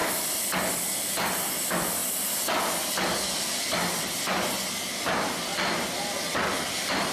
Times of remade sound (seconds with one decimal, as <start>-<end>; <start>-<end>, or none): 1.1-2.0; 2.8-5.5